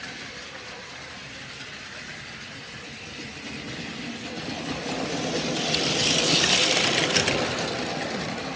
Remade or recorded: recorded